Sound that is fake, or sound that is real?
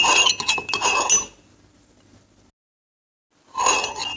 real